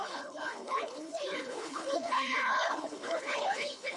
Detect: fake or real fake